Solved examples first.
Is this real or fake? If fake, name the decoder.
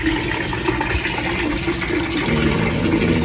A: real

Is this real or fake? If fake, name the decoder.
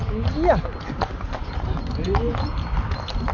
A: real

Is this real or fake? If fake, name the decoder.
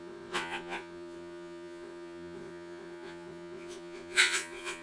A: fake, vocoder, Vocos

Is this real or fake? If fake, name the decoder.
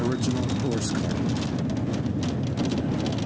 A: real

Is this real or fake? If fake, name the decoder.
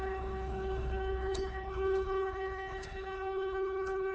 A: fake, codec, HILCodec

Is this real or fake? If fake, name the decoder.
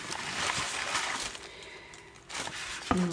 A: real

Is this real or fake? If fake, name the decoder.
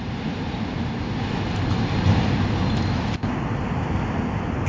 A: real